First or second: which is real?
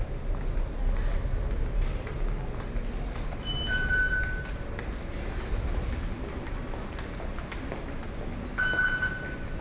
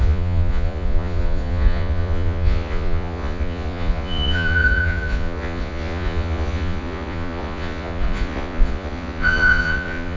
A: first